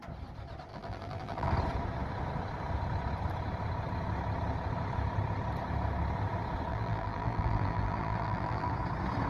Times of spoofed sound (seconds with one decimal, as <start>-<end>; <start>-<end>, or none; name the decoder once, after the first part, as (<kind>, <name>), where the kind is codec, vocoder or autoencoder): 0.7-1.5 (vocoder, BigVGAN v2); 6.7-8.7